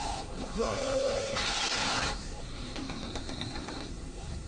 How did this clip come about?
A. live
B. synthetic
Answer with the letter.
B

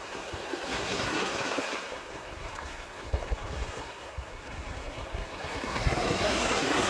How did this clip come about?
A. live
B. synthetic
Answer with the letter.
B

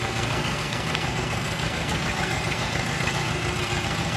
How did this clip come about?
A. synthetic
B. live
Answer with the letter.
A